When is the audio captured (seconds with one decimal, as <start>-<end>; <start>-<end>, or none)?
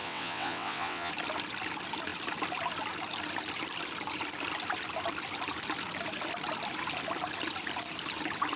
1.1-8.6